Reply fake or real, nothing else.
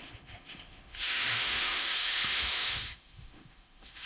fake